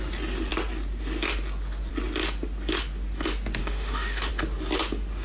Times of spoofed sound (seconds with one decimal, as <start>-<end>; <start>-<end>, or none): 3.6-4.3